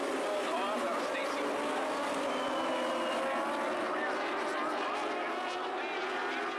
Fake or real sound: real